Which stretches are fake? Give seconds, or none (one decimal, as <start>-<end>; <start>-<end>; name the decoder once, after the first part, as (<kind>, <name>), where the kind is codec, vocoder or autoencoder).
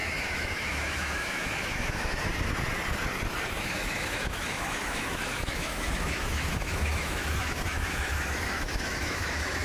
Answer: 0.0-2.3 (autoencoder, DAC-VAE); 3.5-9.6